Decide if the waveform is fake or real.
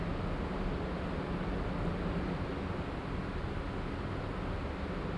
real